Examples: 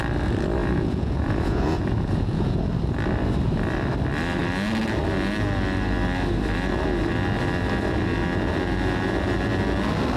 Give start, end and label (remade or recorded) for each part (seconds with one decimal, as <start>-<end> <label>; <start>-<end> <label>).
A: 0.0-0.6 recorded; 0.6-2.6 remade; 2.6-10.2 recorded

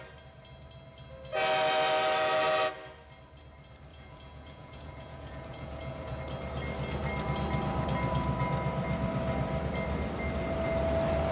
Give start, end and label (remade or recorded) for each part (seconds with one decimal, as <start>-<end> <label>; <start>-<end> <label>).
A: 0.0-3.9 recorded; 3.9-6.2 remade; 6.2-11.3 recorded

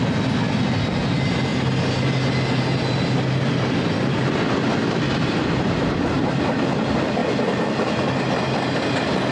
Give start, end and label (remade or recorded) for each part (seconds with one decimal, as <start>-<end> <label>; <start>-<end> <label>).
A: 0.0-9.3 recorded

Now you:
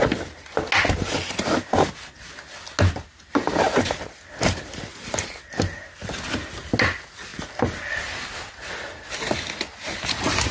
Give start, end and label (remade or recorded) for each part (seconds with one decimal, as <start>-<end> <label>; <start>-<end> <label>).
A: 0.0-10.5 recorded

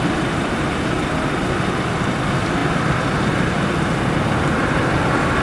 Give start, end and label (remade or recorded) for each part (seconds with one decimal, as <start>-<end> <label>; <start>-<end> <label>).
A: 0.0-5.4 recorded

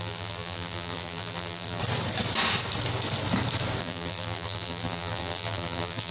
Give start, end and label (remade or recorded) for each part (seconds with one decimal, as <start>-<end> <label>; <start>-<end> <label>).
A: 0.0-1.8 remade; 1.8-3.8 recorded; 3.8-6.1 remade

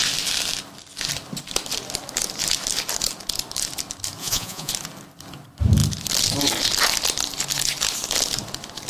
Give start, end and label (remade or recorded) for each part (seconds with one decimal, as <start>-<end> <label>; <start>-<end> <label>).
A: 0.0-4.2 recorded; 4.2-4.7 remade; 4.7-8.9 recorded